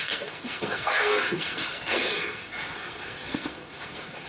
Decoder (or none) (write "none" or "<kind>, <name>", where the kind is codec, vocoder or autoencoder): codec, SNAC